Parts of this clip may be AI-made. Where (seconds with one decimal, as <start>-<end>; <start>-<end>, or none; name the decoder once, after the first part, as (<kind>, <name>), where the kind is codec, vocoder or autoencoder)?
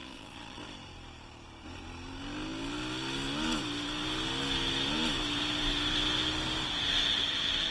0.0-0.6 (vocoder, Vocos)